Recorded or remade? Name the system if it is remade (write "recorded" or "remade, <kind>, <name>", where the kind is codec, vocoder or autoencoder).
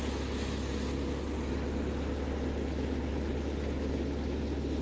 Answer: recorded